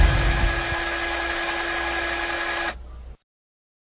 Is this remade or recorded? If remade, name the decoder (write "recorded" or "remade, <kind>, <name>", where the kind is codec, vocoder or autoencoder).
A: recorded